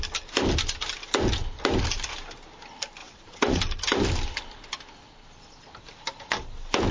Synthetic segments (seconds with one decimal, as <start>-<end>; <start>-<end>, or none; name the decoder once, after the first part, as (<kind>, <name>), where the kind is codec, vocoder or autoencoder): 3.0-3.6 (vocoder, WaveNeXt)